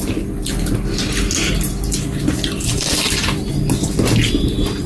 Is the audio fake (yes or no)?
no